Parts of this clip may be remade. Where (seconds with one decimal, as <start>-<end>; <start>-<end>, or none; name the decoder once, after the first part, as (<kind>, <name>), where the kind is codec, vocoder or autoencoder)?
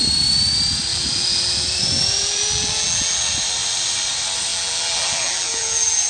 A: 0.9-3.1 (vocoder, BigVGAN v2); 4.5-6.1